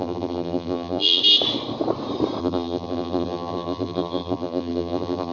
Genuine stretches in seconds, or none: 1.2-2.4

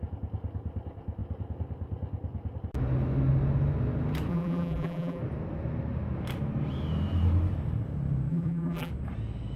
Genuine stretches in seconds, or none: 0.0-4.3; 5.2-8.3; 8.9-9.6